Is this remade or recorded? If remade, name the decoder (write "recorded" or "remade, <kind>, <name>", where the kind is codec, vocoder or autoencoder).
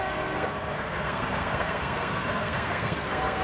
remade, codec, SNAC